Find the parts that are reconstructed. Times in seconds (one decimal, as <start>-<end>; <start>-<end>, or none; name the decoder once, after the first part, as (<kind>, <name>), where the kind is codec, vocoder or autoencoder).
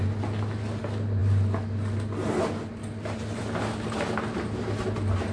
none